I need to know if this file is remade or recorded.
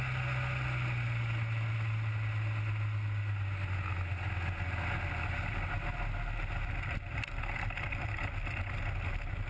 recorded